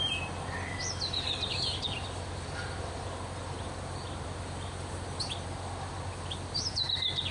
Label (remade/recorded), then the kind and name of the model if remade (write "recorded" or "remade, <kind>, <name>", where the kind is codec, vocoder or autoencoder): recorded